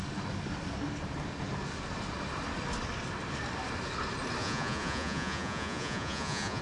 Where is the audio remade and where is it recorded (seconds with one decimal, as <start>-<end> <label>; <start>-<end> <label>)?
0.0-4.4 recorded; 4.4-6.6 remade